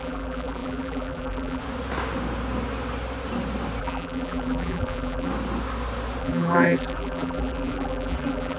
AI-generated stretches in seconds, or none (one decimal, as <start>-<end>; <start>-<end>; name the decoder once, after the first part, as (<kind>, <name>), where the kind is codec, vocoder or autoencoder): 0.0-1.6 (vocoder, BigVGAN v2); 3.8-5.3; 6.2-8.6